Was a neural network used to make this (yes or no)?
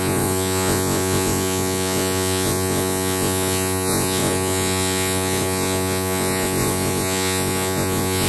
yes